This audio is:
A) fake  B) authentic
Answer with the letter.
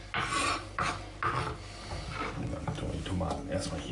B